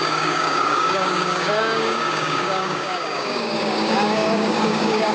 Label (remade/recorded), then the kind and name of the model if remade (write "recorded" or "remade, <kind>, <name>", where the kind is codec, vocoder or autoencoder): remade, codec, DAC